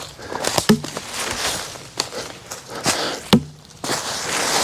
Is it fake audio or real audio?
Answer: real